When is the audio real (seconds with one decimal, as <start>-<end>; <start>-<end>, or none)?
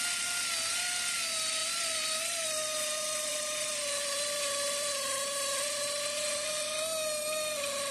0.0-1.6; 5.7-7.9